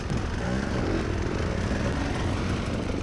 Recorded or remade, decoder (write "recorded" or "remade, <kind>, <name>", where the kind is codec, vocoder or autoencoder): recorded